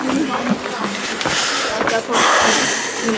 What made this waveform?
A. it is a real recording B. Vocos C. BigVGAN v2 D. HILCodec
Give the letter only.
A